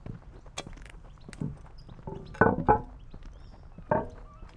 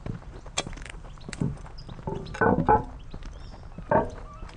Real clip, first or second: first